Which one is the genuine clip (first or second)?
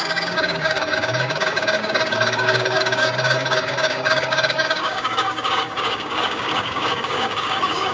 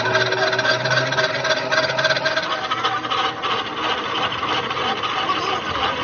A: second